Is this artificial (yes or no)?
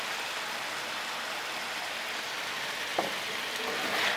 no